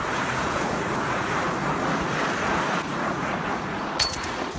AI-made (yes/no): yes